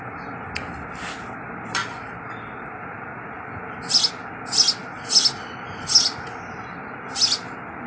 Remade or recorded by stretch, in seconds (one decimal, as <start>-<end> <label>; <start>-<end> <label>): 0.0-7.9 recorded